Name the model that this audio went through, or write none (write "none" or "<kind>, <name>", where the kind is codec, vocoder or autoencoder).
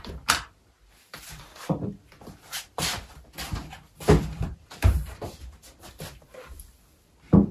vocoder, BigVGAN v2